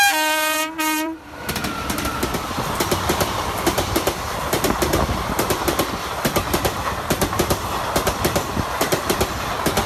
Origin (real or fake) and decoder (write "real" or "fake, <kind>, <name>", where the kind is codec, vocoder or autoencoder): fake, vocoder, BigVGAN v2